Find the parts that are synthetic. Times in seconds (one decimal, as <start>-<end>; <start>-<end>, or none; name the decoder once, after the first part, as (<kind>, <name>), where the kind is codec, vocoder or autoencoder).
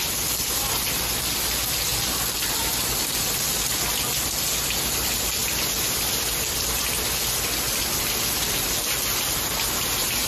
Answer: none